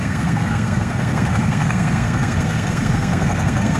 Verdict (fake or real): fake